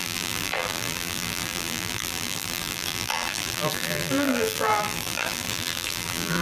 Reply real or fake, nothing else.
fake